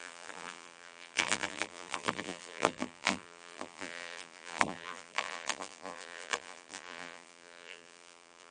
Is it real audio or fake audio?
fake